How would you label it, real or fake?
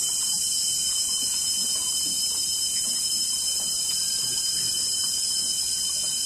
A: real